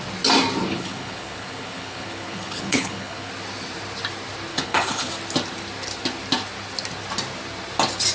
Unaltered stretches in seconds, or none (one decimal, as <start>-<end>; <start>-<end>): 0.0-0.6; 3.3-4.5; 5.1-8.1